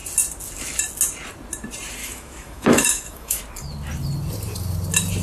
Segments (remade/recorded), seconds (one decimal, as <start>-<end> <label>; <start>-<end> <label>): 0.0-2.0 recorded; 2.0-3.4 remade; 3.4-5.2 recorded